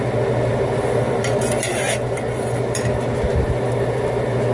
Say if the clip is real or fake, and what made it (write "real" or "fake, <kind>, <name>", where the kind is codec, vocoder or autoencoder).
real